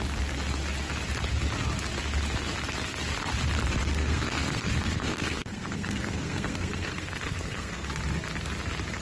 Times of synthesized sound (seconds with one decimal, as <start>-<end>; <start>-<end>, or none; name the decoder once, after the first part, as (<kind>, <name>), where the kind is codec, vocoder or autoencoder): 3.8-7.9 (codec, SNAC)